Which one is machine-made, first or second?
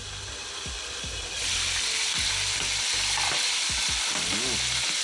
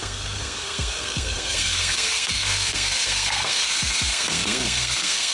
second